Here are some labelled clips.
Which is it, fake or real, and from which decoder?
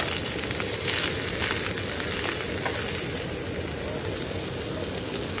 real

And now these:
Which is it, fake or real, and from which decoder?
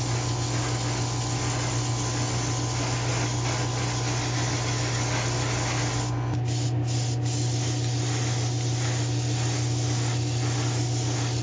real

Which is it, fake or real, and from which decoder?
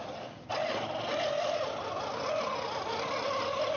real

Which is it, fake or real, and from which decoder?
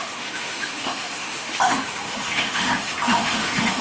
fake, autoencoder, DAC-VAE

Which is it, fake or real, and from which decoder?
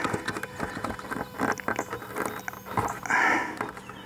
real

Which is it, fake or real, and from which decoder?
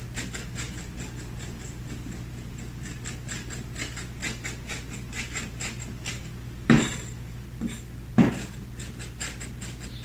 real